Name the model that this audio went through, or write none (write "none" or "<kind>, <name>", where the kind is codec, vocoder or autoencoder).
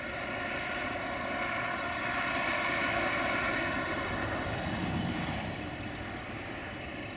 none